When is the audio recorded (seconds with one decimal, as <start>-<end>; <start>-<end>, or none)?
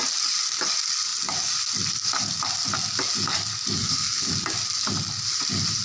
0.0-3.8; 4.3-5.8